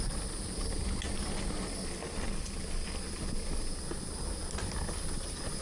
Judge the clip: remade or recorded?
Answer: recorded